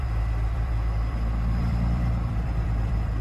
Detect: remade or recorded remade